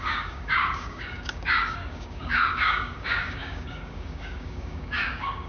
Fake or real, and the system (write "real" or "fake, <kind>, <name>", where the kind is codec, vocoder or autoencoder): fake, codec, DAC